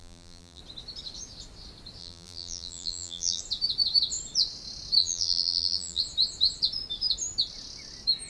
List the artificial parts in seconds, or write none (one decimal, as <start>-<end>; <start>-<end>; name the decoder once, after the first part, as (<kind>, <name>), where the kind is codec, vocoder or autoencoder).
0.0-0.6 (vocoder, BigVGAN v2); 2.0-3.4; 5.0-6.0